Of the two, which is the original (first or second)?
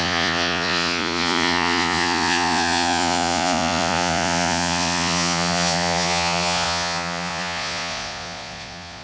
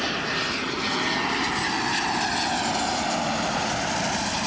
second